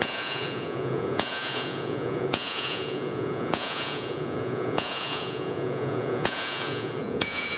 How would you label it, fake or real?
fake